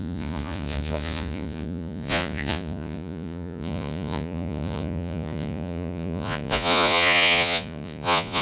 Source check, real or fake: fake